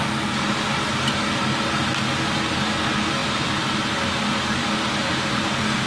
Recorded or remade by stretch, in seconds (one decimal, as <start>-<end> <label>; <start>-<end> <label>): 0.0-5.9 recorded